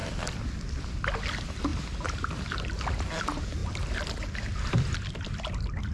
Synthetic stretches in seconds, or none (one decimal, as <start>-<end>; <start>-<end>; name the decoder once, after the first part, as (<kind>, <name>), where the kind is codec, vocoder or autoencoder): none